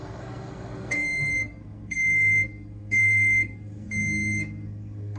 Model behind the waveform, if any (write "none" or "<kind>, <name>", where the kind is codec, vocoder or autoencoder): codec, SNAC